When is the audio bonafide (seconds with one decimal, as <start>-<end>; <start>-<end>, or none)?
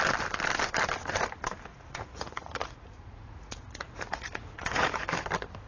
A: 0.0-1.7; 5.0-5.7